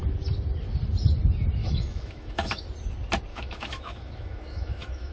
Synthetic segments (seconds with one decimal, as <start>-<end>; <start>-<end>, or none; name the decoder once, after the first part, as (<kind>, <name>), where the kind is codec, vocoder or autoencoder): 1.6-2.6 (autoencoder, DAC-VAE); 3.3-5.1

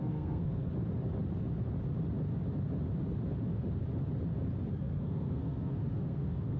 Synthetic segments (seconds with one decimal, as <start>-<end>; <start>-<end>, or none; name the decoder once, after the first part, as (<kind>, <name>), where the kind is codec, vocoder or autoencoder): 0.0-0.7 (codec, SNAC); 4.7-6.6

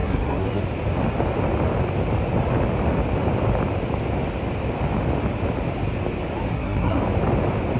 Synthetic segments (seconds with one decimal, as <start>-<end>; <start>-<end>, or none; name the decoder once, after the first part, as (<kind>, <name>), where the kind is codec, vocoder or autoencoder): 0.0-0.6 (codec, SNAC); 6.5-7.0

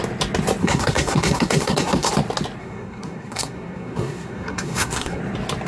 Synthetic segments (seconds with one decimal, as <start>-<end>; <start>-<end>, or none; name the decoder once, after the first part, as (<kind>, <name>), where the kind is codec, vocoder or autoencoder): 0.6-2.1 (codec, SNAC); 2.6-5.2

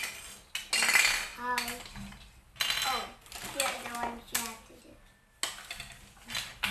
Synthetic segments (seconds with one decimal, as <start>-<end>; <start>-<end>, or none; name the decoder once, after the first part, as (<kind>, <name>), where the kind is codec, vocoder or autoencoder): none

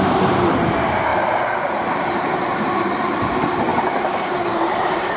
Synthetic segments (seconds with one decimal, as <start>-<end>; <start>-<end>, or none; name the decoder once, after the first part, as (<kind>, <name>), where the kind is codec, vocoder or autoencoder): 0.0-1.1 (vocoder, BigVGAN v2); 1.7-3.7; 4.3-5.2

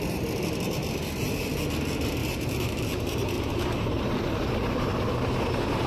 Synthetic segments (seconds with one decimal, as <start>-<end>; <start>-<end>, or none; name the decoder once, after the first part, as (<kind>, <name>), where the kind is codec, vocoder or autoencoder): 2.2-5.1 (vocoder, BigVGAN v2)

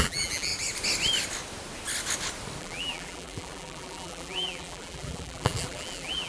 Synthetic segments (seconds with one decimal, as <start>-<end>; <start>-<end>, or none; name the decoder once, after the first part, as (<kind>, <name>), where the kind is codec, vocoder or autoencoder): 0.0-0.5 (vocoder, BigVGAN v2); 2.6-6.3